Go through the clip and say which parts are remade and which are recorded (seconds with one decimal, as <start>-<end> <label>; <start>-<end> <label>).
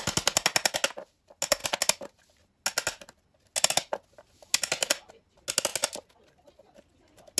0.0-7.4 recorded